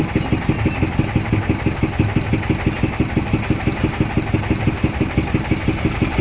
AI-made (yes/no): no